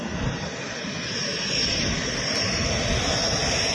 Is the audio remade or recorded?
recorded